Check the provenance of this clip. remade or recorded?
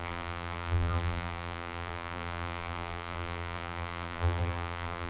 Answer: remade